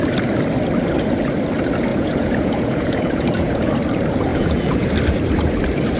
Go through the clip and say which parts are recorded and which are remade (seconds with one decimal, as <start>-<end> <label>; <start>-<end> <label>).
0.0-1.9 recorded; 1.9-3.7 remade; 3.7-4.3 recorded; 4.3-4.9 remade; 4.9-6.0 recorded

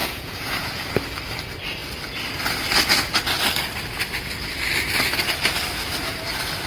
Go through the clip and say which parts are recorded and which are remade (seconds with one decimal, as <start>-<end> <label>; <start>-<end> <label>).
0.0-0.9 remade; 0.9-6.7 recorded

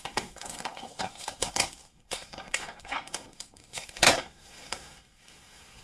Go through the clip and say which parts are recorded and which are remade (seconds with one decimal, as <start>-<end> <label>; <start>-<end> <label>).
0.0-5.8 remade

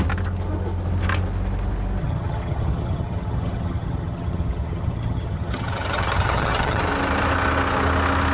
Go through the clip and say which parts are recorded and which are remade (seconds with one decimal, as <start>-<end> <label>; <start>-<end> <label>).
0.0-2.0 recorded; 2.0-6.8 remade; 6.8-8.3 recorded

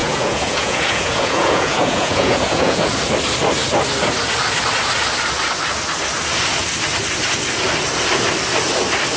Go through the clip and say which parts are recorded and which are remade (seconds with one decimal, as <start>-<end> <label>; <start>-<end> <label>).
0.0-2.9 remade; 2.9-9.2 recorded